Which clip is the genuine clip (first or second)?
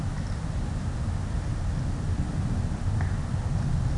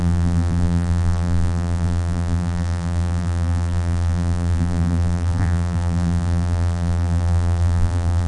first